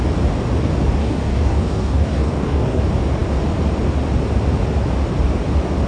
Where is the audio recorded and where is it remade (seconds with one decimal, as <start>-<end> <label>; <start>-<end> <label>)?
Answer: 0.0-1.0 recorded; 1.0-2.8 remade; 2.8-5.9 recorded